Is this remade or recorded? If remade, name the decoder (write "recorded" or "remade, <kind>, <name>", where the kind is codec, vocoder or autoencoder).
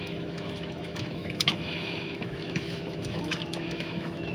remade, autoencoder, DAC-VAE